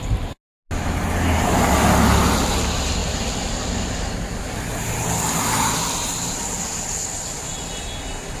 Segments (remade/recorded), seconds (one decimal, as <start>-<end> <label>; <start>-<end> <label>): 0.0-8.4 recorded